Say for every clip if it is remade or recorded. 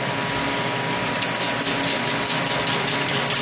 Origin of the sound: recorded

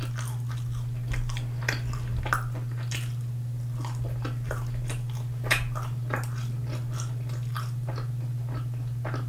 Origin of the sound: recorded